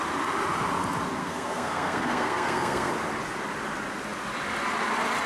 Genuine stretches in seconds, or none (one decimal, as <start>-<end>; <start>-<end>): 0.0-1.2; 2.9-5.3